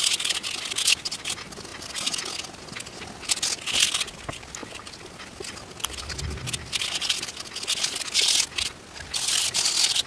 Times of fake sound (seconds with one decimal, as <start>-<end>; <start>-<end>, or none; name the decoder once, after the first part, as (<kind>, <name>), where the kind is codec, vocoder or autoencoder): none

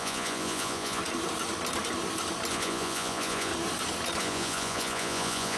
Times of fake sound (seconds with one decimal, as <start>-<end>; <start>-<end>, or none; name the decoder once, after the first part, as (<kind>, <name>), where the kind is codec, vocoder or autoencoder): 0.0-1.0 (vocoder, Vocos); 2.5-3.5; 4.2-5.6

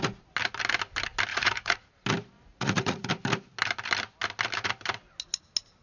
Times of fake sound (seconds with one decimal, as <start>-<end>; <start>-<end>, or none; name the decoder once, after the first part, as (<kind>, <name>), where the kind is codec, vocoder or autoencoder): 1.3-1.9 (vocoder, Vocos); 2.5-3.1

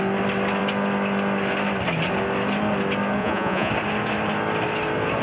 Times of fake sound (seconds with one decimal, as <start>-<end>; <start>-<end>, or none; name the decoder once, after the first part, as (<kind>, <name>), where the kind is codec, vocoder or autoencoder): 3.2-3.7 (vocoder, Vocos)

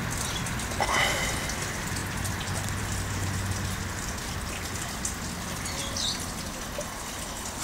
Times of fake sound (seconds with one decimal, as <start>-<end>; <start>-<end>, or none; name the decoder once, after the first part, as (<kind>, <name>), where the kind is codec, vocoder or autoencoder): none

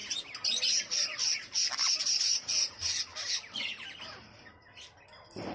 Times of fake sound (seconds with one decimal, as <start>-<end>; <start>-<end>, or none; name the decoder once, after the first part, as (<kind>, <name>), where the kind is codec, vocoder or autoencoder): 2.2-2.8 (vocoder, Vocos)